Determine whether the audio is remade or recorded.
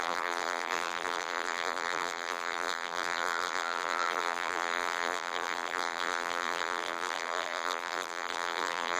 remade